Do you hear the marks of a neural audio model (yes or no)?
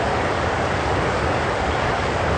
yes